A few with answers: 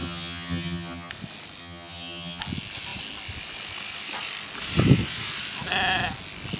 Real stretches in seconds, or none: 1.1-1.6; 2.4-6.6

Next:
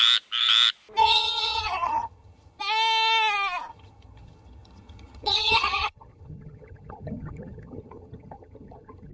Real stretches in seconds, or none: 0.0-1.0; 2.6-3.7

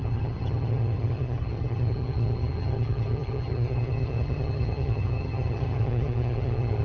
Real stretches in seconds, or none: none